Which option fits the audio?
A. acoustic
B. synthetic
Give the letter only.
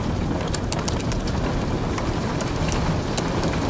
A